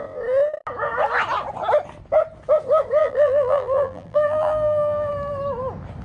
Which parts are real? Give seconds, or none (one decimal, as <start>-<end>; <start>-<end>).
0.0-3.0; 5.1-6.0